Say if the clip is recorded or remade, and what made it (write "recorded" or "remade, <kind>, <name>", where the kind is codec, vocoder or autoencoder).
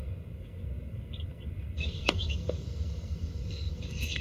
remade, codec, SNAC